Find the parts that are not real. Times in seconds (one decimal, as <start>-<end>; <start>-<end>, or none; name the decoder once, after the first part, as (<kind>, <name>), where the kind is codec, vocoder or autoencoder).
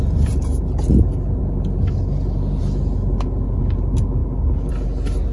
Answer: none